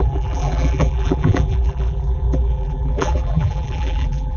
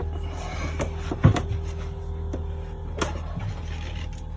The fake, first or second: first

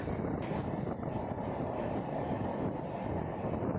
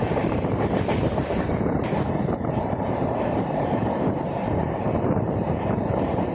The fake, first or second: second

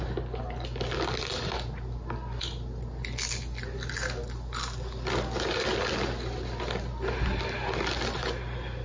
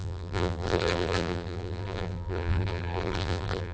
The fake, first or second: second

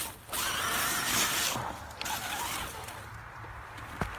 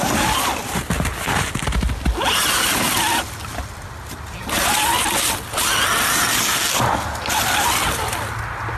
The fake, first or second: first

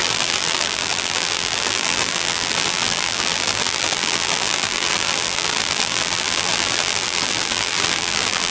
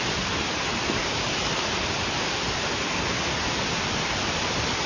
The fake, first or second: first